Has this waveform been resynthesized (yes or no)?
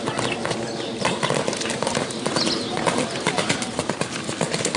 no